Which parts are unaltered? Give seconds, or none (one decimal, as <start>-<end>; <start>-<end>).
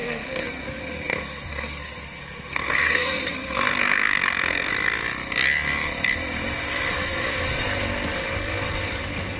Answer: 4.7-9.4